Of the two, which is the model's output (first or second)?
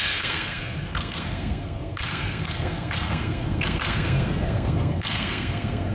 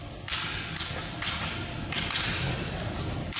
first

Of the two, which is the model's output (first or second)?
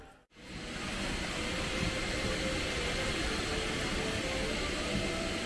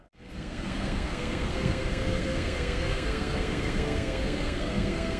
second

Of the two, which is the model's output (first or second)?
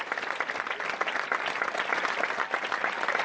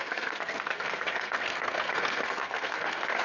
second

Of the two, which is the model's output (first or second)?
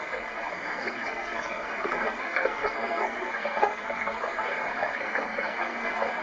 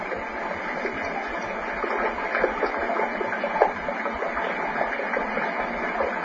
first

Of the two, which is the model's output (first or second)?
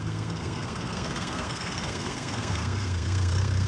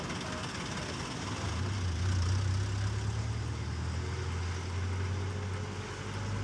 first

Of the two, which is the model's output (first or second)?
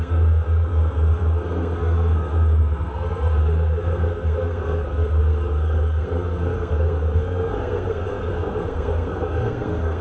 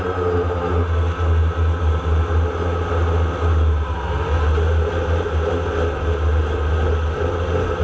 first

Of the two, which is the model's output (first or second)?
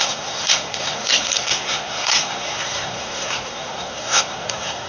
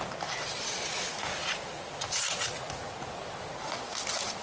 first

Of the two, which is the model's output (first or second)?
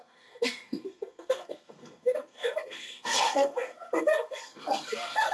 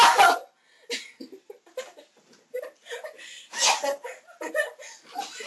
first